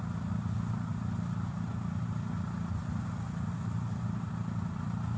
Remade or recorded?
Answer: recorded